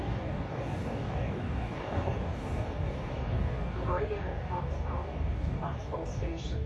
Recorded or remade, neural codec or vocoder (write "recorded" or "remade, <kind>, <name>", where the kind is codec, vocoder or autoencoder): remade, codec, DAC